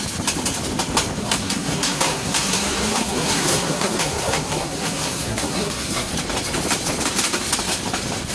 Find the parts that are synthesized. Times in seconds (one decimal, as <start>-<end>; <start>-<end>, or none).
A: 1.2-6.1